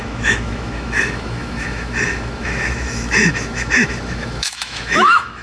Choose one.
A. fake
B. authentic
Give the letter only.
A